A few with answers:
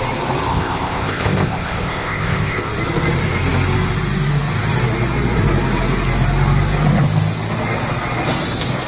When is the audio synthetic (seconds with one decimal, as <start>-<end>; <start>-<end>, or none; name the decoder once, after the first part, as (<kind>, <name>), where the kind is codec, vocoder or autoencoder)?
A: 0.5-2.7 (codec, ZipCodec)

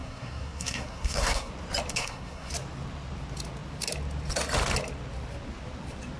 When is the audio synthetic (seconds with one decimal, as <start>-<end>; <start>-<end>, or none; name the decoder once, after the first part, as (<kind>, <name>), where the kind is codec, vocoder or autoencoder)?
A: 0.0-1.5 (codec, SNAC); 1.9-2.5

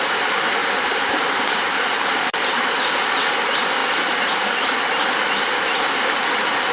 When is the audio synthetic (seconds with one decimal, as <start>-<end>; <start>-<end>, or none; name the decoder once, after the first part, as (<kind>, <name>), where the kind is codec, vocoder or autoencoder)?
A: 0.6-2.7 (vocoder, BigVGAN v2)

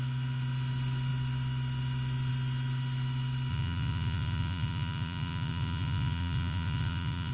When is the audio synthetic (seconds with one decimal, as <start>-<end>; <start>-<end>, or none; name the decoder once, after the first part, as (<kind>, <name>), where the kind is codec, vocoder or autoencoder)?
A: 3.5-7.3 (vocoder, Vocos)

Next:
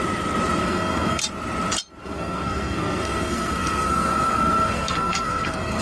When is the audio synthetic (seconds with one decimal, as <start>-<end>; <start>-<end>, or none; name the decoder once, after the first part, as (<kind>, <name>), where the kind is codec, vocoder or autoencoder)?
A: 0.6-1.2 (codec, SNAC); 2.0-5.8